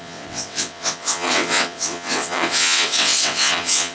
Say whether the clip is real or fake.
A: fake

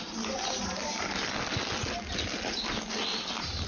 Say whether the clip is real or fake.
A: real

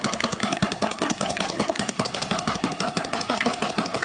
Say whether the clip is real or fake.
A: fake